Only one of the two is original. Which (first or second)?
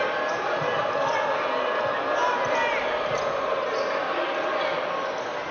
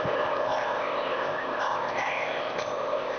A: first